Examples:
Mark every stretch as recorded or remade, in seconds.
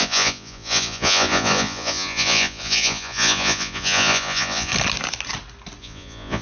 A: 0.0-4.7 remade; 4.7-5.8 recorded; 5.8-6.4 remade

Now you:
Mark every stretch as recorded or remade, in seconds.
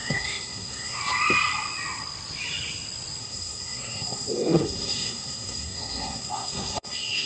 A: 0.0-1.0 remade; 1.0-3.2 recorded; 3.2-7.3 remade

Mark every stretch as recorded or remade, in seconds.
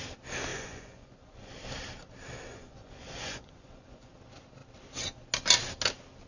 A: 0.0-0.5 recorded; 0.5-1.5 remade; 1.5-2.5 recorded; 2.5-4.1 remade; 4.1-6.3 recorded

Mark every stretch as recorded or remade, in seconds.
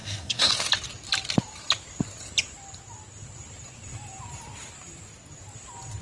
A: 0.0-0.5 remade; 0.5-6.0 recorded